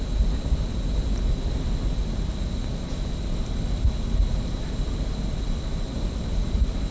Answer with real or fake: real